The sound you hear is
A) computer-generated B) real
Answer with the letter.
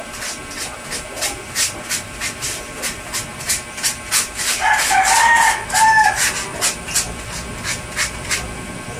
A